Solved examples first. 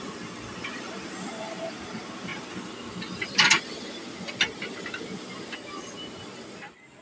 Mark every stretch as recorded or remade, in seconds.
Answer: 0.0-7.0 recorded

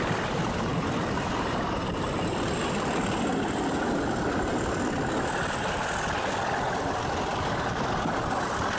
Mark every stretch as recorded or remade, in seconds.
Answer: 0.0-8.8 recorded

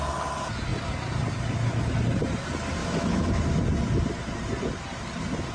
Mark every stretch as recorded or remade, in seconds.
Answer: 0.0-2.8 recorded; 2.8-3.4 remade; 3.4-5.5 recorded

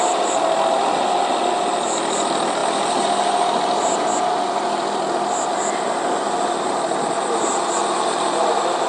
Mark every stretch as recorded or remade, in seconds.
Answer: 0.0-8.9 recorded

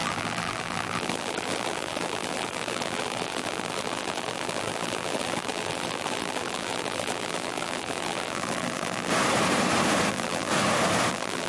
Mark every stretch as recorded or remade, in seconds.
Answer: 0.0-9.1 remade; 9.1-10.1 recorded; 10.1-10.5 remade; 10.5-11.1 recorded; 11.1-11.5 remade

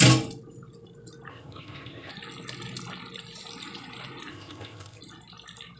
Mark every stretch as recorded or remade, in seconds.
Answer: 0.0-1.3 recorded; 1.3-2.1 remade; 2.1-4.3 recorded; 4.3-5.0 remade; 5.0-5.8 recorded

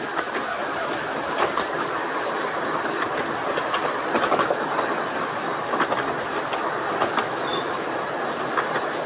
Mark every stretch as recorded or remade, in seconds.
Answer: 0.0-7.5 recorded; 7.5-8.5 remade; 8.5-9.1 recorded

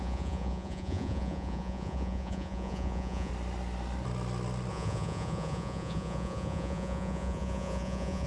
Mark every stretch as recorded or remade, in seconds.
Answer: 0.0-3.3 remade; 3.3-4.7 recorded; 4.7-8.3 remade